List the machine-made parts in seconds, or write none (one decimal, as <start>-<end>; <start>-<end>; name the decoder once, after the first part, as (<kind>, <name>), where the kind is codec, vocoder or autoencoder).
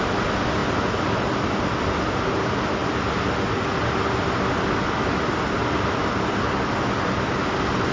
none